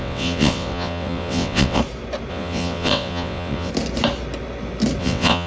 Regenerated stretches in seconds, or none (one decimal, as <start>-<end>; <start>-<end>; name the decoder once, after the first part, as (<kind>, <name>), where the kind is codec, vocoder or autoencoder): 0.0-1.8 (vocoder, WaveNeXt); 2.3-3.7; 5.0-5.5